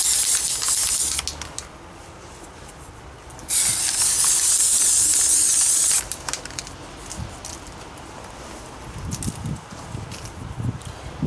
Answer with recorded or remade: recorded